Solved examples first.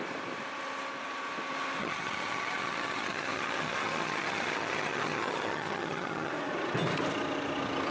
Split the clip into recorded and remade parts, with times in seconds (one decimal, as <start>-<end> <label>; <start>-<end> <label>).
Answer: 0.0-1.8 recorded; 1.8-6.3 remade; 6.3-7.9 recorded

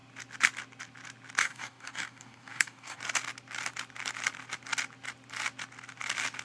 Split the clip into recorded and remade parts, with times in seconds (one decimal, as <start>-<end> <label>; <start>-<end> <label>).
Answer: 0.0-1.4 recorded; 1.4-3.0 remade; 3.0-6.4 recorded

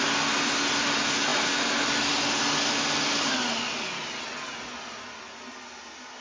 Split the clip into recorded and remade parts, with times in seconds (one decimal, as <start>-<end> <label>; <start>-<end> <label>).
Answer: 0.0-6.2 recorded

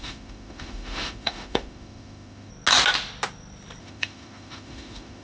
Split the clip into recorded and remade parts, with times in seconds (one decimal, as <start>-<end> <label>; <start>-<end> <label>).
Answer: 0.0-2.5 remade; 2.5-3.8 recorded; 3.8-5.2 remade